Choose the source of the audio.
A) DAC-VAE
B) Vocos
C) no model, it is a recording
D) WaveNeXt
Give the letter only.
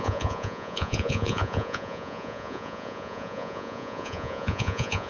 B